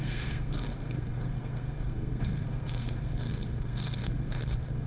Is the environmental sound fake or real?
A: fake